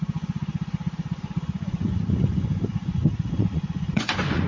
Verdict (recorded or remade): remade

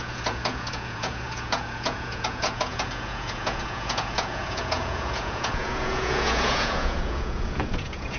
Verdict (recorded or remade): remade